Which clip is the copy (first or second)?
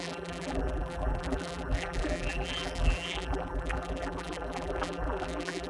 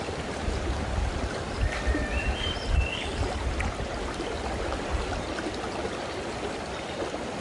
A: first